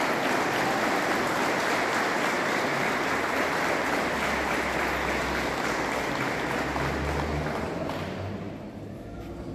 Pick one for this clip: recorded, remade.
recorded